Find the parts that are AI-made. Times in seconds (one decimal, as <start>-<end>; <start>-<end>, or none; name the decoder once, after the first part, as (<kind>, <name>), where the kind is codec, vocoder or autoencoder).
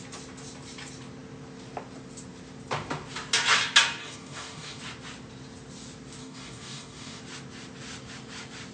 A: 4.0-4.8 (codec, DAC); 6.2-7.2